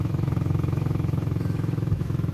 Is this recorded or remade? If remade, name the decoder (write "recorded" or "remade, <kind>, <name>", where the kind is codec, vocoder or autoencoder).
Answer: remade, autoencoder, DAC-VAE